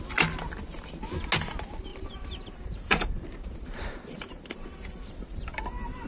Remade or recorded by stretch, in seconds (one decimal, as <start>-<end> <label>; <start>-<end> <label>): 0.0-1.9 recorded; 1.9-5.6 remade; 5.6-6.1 recorded